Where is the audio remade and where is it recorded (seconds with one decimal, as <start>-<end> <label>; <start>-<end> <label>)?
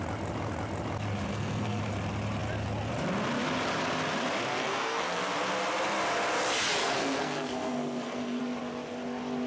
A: 0.0-1.3 recorded; 1.3-1.8 remade; 1.8-4.6 recorded; 4.6-5.2 remade; 5.2-6.8 recorded; 6.8-8.4 remade; 8.4-9.5 recorded